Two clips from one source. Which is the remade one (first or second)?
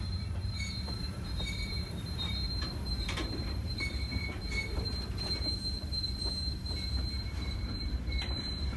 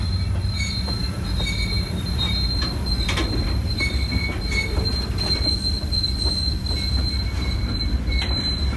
first